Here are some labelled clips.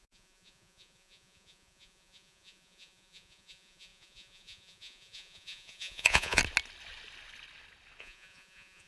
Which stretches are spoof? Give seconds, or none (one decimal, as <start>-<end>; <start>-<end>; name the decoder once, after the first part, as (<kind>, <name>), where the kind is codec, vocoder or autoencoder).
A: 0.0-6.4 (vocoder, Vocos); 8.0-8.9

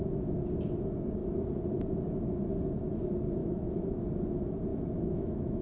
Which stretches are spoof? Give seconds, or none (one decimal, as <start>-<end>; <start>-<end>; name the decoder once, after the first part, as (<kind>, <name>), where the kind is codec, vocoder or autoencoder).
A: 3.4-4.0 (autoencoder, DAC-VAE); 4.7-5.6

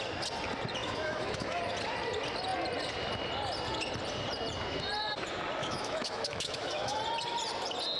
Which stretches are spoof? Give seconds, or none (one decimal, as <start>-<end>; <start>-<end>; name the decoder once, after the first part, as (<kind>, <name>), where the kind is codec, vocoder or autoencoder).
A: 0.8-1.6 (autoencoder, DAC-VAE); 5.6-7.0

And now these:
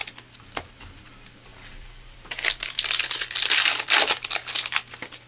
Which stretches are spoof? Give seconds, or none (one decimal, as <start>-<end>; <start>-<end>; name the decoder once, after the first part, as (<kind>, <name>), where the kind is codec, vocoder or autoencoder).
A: 1.5-4.0 (vocoder, BigVGAN v2)

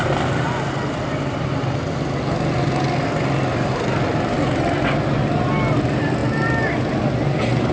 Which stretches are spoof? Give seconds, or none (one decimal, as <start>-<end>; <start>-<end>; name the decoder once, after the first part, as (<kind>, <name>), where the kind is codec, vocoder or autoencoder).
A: none

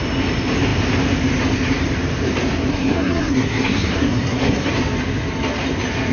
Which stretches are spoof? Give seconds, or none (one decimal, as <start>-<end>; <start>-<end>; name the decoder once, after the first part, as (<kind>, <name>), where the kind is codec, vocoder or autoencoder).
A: 2.7-4.7 (codec, SNAC)

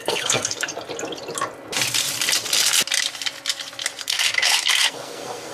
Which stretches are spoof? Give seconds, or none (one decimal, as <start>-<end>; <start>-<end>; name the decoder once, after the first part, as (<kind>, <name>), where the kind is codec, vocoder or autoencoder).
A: 0.0-0.7 (codec, SNAC); 4.0-5.5